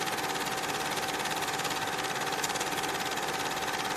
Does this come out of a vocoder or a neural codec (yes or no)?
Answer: no